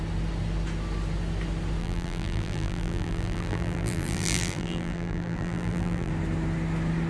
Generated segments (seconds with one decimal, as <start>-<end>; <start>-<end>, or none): 1.8-6.1